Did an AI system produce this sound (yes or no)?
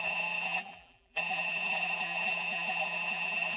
yes